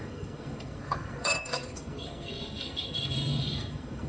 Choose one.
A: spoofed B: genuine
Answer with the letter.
A